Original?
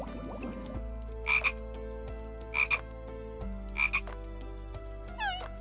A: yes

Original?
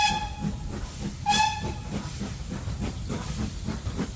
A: yes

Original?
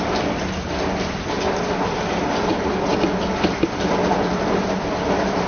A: yes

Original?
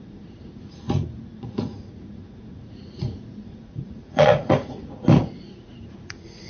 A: no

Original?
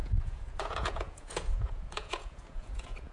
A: no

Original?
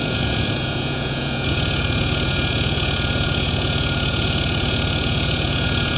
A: no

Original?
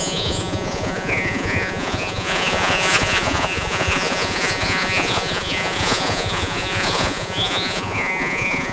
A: no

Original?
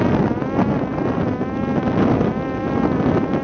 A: yes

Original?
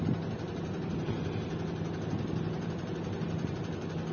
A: yes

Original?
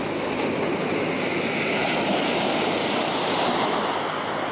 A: yes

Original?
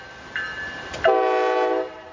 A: yes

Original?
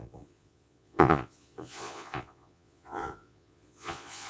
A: no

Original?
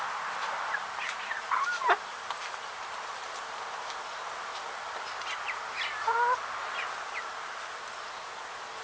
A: yes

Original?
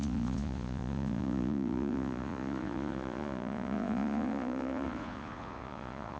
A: no